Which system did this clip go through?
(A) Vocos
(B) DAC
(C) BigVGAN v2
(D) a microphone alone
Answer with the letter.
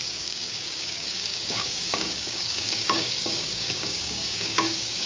B